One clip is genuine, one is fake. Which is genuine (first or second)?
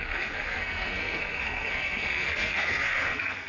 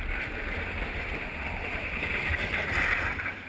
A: second